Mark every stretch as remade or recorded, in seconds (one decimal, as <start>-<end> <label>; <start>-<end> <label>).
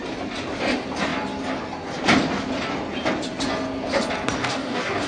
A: 0.0-4.4 recorded; 4.4-5.1 remade